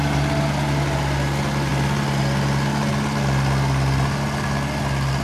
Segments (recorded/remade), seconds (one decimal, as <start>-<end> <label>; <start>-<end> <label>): 0.0-5.2 recorded